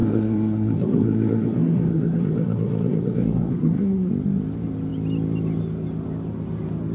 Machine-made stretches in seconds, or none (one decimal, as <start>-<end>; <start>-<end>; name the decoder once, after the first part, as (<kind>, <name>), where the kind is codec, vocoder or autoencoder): 0.0-4.1 (codec, SNAC)